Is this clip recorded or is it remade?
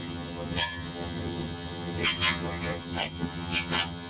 remade